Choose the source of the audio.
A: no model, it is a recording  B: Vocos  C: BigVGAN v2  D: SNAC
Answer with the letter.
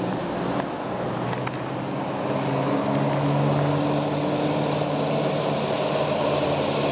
A